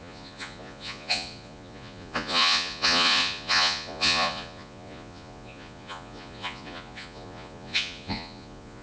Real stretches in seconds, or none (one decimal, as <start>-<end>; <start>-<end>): none